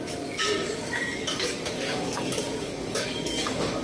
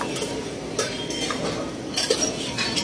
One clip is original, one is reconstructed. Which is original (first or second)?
second